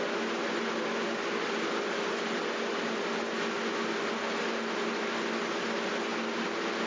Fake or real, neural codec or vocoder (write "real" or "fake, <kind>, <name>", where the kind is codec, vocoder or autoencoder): real